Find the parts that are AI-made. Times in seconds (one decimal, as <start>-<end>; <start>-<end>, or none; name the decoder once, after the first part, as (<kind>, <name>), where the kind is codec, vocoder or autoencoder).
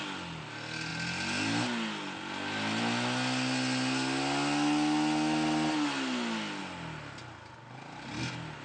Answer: none